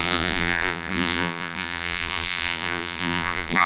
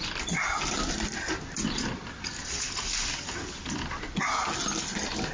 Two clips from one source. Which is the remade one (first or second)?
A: first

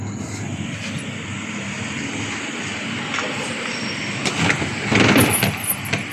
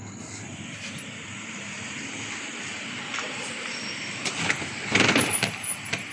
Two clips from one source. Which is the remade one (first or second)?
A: second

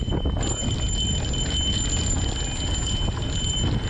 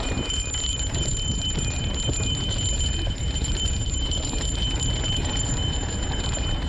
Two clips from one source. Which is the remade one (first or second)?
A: second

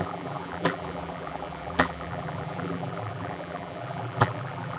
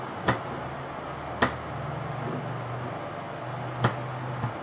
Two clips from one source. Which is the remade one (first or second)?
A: first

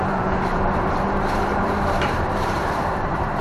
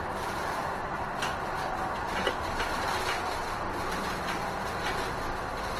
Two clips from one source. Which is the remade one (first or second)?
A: first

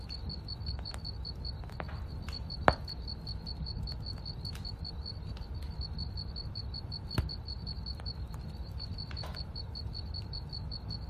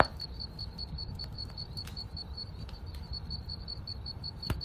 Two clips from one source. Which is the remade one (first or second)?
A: second